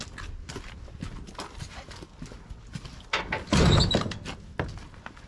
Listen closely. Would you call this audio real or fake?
real